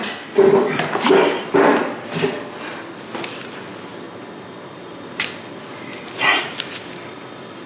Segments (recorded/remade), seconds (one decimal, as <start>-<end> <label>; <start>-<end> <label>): 0.0-7.7 recorded